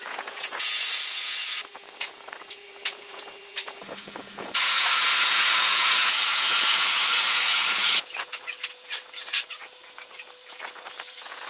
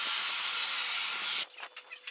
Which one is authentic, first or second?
second